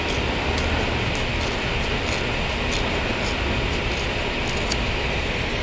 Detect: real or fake real